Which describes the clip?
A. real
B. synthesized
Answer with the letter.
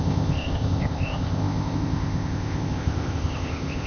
B